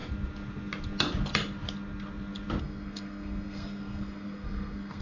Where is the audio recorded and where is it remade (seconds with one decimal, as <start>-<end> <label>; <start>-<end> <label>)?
0.0-2.6 recorded; 2.6-5.0 remade